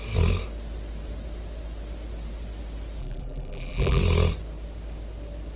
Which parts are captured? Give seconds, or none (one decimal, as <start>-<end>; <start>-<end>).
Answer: 0.0-3.0; 4.0-5.6

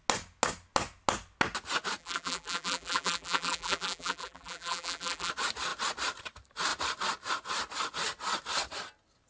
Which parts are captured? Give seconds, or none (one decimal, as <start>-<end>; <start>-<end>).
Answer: 0.0-2.0; 5.3-9.3